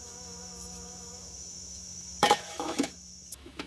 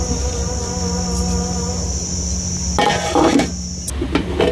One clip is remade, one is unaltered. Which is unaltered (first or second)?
second